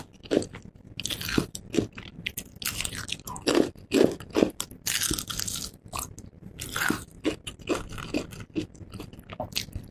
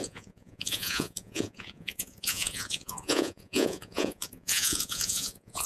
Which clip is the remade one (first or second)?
second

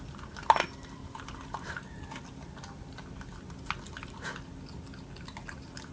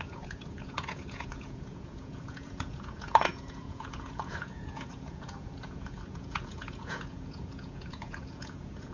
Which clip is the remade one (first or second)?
second